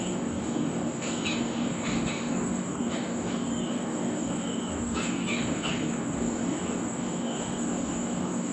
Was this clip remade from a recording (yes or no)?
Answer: yes